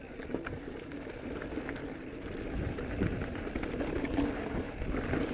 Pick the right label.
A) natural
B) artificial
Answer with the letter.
A